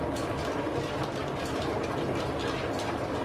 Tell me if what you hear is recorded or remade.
recorded